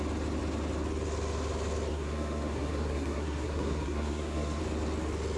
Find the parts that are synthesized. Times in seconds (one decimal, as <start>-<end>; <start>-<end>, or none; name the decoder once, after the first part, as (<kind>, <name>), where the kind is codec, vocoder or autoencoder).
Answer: 1.9-4.6 (codec, SNAC)